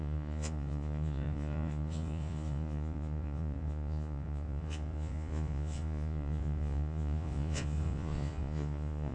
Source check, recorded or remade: remade